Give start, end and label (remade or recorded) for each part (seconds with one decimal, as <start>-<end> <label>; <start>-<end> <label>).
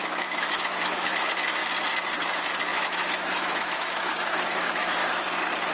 0.0-1.6 remade; 1.6-2.3 recorded; 2.3-5.0 remade; 5.0-5.7 recorded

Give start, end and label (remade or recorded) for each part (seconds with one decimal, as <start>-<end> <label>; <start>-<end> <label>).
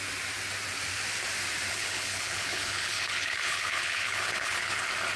0.0-1.7 recorded; 1.7-4.8 remade; 4.8-5.2 recorded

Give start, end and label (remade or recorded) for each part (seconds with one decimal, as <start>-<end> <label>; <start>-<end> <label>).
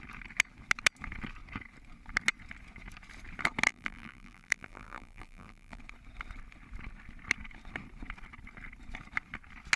0.0-3.7 recorded; 3.7-5.8 remade; 5.8-9.8 recorded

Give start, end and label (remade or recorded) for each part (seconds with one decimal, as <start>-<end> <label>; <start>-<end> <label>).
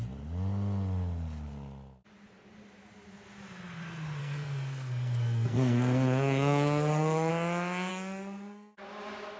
0.0-4.2 recorded; 4.2-7.3 remade; 7.3-7.9 recorded; 7.9-8.8 remade; 8.8-9.4 recorded